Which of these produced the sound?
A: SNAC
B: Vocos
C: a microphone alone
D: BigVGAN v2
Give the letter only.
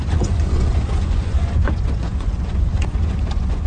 B